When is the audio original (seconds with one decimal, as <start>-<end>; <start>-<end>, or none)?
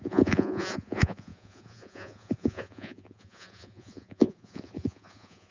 none